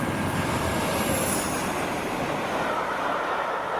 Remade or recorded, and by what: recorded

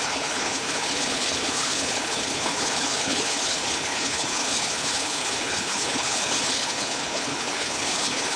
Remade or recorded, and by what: remade, codec, HILCodec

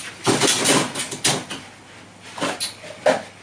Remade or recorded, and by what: recorded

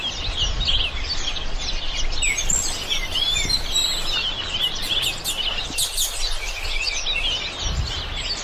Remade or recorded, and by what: recorded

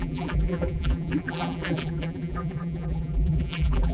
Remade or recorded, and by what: remade, vocoder, BigVGAN v2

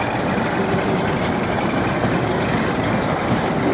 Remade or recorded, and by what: recorded